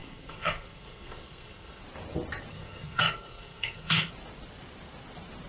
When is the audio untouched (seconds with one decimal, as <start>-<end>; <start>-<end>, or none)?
1.8-2.5; 4.1-5.5